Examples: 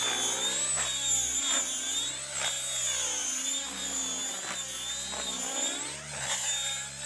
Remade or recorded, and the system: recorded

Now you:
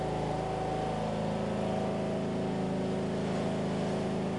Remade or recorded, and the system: recorded